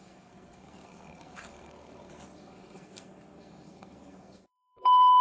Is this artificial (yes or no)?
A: yes